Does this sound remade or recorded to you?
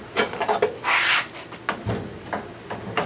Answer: recorded